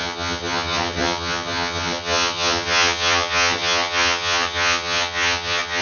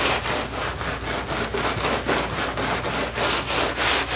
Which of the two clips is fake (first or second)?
first